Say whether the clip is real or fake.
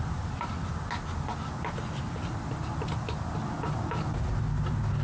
real